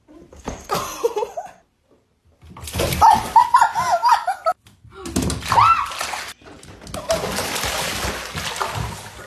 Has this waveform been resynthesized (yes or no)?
no